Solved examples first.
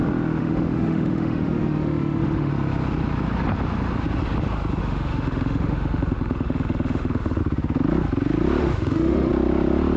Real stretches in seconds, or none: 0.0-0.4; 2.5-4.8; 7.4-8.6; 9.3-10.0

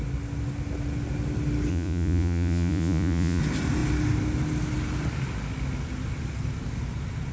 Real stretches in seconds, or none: 0.0-1.7; 3.4-7.3

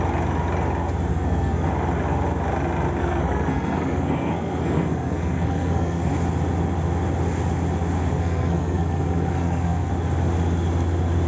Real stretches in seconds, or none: 0.0-1.1; 1.7-3.0; 6.1-8.1; 9.9-11.3

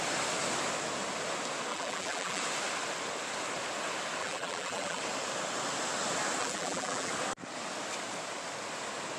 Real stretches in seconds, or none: 0.0-1.7; 2.4-4.2; 5.0-6.4; 7.1-9.2